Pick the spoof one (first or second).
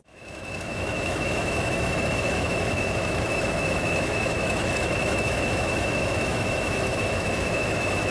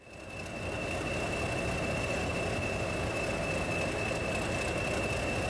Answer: first